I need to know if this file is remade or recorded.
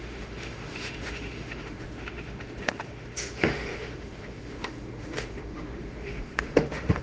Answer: remade